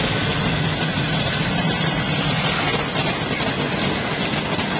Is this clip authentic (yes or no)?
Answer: yes